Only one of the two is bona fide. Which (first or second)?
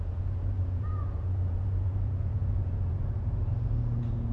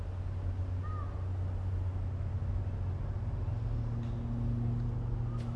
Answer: second